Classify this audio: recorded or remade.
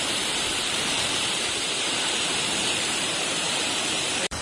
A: remade